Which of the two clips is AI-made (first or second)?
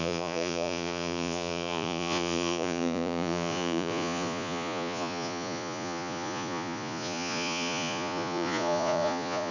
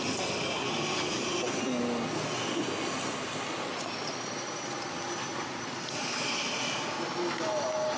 first